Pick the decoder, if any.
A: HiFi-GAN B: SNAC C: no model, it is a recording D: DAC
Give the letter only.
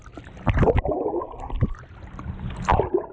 C